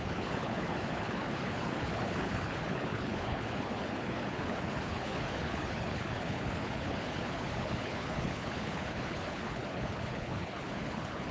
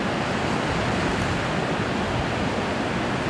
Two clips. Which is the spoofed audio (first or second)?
first